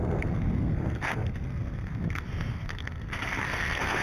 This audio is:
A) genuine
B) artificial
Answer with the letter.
B